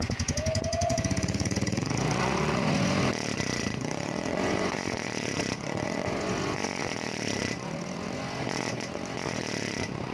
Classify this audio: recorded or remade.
remade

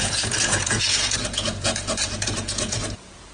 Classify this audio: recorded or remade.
remade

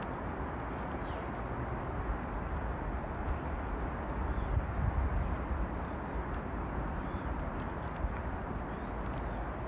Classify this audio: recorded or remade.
recorded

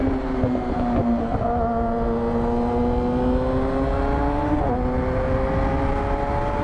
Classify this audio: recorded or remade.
recorded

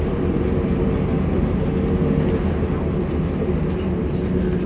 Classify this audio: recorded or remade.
recorded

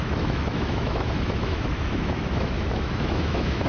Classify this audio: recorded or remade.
remade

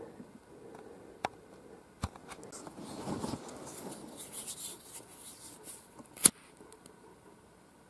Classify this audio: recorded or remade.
recorded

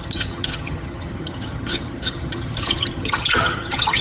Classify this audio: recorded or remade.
remade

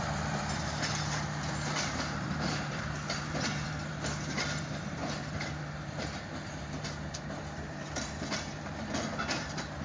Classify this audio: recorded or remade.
remade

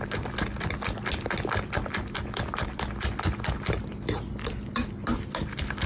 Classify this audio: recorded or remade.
recorded